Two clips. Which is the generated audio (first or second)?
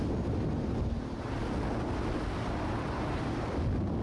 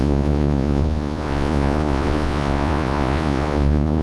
second